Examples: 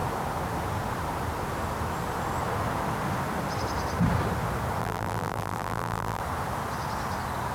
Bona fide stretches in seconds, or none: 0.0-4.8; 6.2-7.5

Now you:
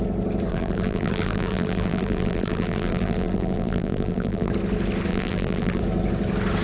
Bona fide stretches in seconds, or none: 0.0-0.5; 4.5-5.1; 5.8-6.6